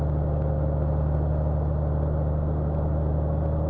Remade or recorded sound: recorded